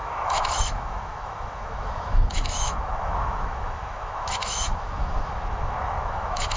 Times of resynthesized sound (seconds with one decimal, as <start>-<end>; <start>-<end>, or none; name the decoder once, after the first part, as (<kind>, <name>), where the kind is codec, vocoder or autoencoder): 0.0-6.6 (autoencoder, DAC-VAE)